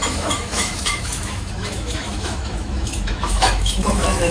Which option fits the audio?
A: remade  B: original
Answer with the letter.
A